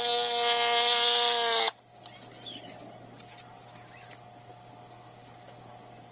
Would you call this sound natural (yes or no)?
yes